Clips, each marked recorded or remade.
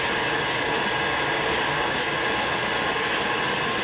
recorded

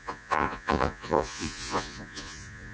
remade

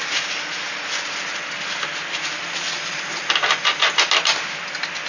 recorded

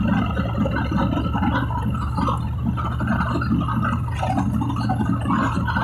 recorded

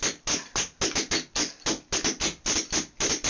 recorded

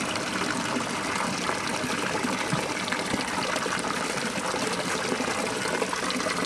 recorded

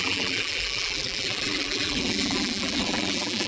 remade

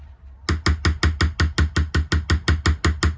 recorded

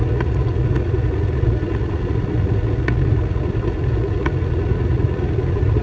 remade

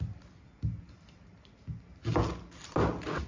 recorded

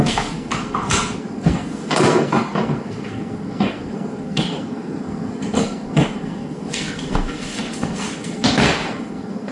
remade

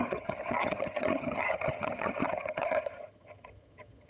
remade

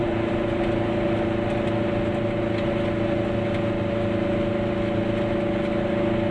recorded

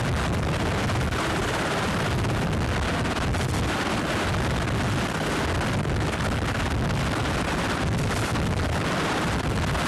recorded